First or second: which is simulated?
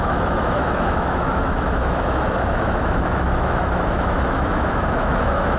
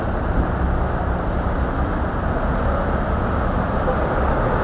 first